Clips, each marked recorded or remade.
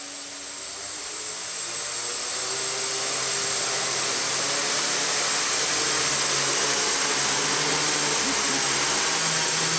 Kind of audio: recorded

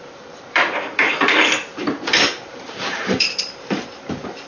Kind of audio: remade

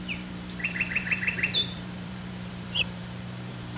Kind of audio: remade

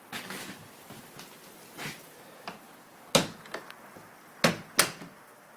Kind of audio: recorded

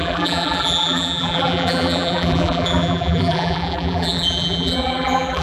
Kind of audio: remade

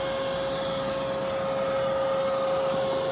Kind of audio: recorded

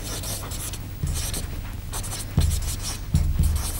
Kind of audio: recorded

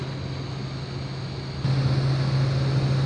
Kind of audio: recorded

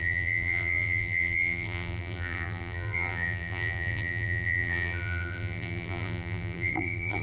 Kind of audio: remade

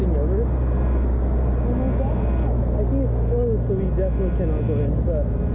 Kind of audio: recorded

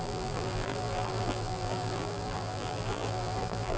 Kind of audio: remade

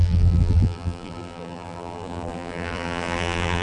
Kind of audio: remade